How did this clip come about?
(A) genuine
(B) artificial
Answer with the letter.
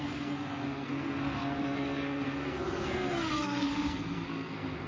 B